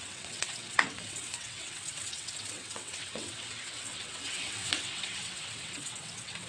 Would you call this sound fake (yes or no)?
yes